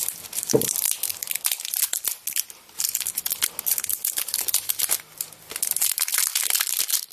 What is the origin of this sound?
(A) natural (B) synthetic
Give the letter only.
A